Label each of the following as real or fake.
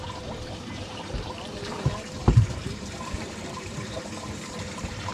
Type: fake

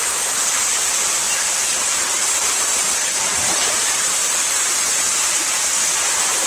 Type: fake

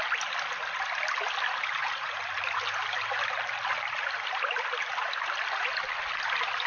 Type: real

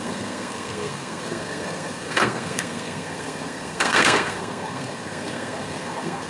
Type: fake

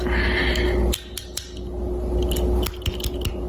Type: real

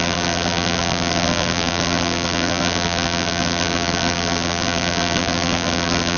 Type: fake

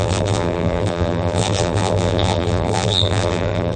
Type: fake